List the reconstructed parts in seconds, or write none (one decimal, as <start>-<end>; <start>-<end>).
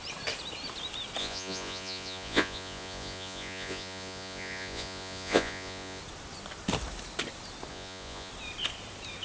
1.2-6.0; 7.7-8.3